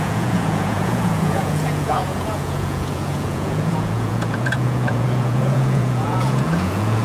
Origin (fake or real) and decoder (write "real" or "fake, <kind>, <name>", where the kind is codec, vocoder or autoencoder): fake, vocoder, Vocos